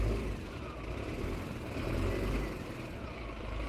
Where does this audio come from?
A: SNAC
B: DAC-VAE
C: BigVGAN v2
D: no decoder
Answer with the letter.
D